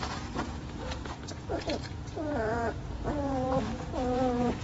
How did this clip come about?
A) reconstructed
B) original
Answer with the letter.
A